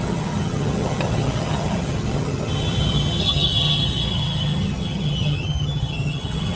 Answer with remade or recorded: remade